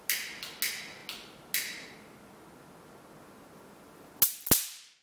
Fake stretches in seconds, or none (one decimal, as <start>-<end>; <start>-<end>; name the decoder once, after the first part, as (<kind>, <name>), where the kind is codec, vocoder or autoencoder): none